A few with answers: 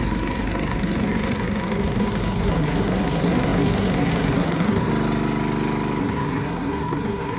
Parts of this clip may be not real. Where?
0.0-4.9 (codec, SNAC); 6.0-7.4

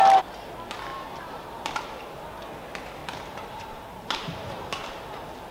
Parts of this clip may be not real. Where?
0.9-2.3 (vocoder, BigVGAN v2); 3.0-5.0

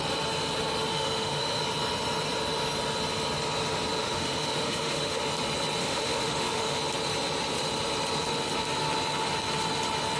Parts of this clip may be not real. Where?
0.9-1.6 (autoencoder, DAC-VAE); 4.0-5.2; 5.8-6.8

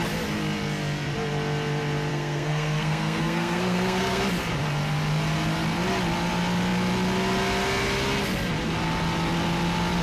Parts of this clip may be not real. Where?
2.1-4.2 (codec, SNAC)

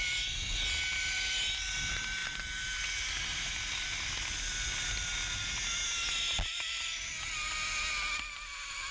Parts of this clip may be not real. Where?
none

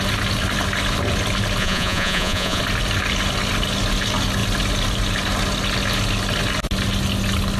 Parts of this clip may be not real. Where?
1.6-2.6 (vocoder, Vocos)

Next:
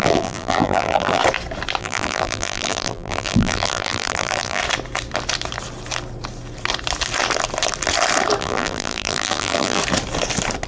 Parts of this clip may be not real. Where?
0.0-1.2 (vocoder, BigVGAN v2); 1.8-4.6; 8.4-9.8

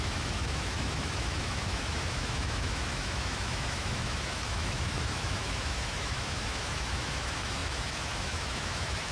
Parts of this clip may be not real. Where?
0.0-9.1 (autoencoder, DAC-VAE)